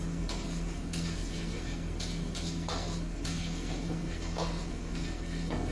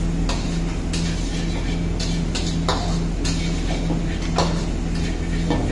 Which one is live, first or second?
second